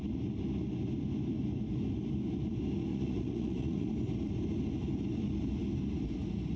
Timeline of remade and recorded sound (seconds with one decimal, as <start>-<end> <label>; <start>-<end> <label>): 0.0-2.9 recorded; 2.9-3.9 remade; 3.9-6.6 recorded